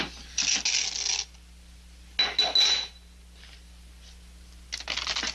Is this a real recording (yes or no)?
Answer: yes